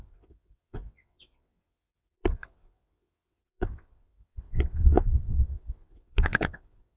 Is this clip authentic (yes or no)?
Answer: no